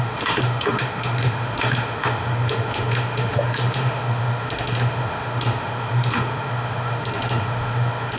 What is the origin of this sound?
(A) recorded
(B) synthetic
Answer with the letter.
B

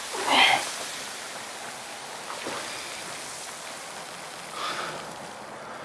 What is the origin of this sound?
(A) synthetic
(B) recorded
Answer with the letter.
B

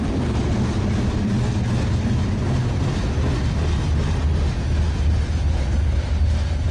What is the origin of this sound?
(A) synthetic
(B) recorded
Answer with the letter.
B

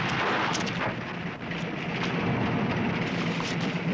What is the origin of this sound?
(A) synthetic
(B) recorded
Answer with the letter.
B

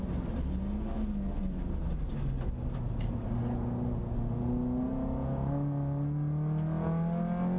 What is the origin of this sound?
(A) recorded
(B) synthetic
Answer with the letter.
A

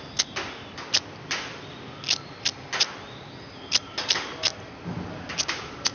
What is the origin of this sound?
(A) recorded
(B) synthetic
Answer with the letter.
A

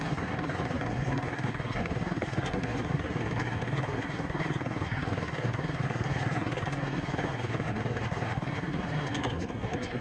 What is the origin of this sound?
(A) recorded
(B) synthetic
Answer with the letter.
B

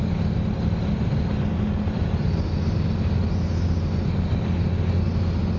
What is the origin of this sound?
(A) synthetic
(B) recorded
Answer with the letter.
B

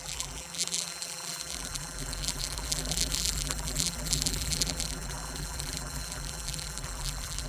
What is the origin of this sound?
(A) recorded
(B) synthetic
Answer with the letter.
B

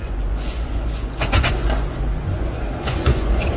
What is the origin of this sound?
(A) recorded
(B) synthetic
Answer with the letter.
B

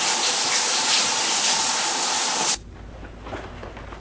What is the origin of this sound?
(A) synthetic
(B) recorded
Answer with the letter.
B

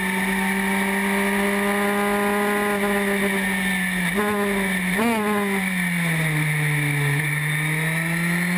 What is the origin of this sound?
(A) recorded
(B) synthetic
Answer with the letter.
A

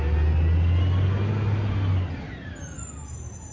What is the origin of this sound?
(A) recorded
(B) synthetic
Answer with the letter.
A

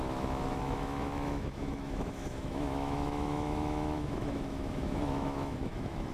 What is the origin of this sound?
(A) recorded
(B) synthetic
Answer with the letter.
B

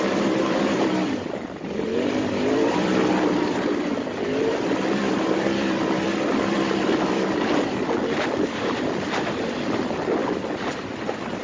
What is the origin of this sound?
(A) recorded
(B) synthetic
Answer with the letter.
B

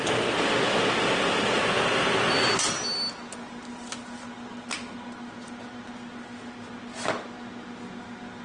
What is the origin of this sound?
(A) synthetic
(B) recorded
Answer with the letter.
B